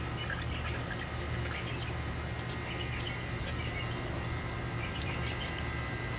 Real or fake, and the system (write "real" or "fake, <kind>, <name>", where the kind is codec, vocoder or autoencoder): real